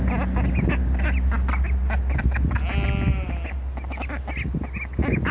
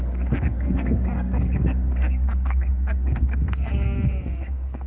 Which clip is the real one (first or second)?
first